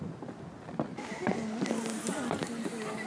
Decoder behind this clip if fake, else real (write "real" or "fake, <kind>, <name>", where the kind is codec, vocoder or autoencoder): real